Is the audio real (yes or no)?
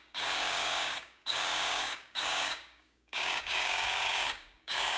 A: no